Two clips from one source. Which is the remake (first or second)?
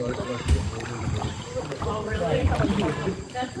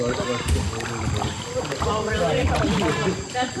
first